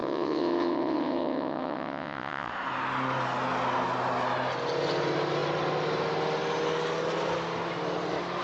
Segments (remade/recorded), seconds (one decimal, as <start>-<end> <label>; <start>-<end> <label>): 0.0-2.5 remade; 2.5-8.4 recorded